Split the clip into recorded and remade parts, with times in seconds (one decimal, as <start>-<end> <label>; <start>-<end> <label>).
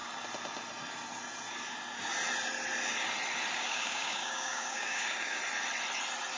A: 0.0-3.5 recorded; 3.5-5.4 remade; 5.4-6.4 recorded